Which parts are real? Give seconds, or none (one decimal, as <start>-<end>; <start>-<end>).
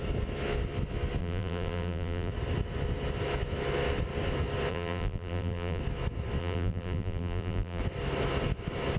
0.0-1.2; 2.3-4.7; 5.8-6.4; 7.8-9.0